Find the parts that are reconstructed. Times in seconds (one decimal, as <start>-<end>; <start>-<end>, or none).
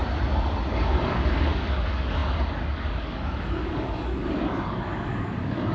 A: 0.7-5.7